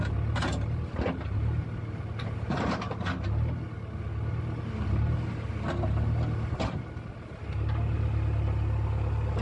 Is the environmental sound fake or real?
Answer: real